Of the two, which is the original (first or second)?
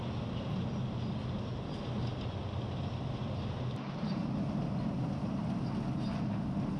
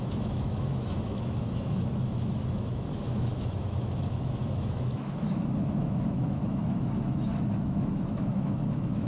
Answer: first